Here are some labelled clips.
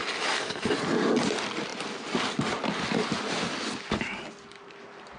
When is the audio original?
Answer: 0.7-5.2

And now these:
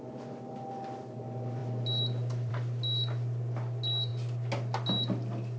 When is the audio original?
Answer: 0.0-5.6

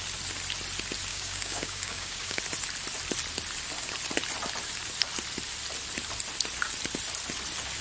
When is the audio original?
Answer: 0.0-1.1; 2.4-7.8

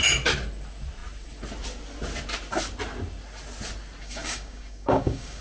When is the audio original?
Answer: 0.0-4.0

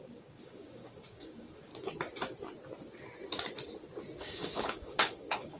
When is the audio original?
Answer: 1.7-4.2

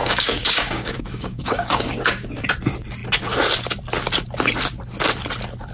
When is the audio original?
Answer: 2.5-5.7

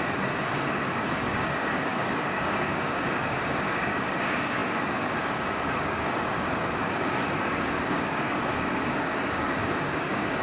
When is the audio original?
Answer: none